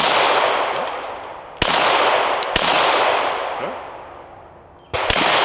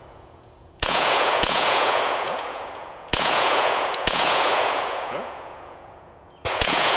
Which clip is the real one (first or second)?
first